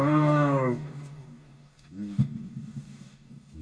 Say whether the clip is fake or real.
fake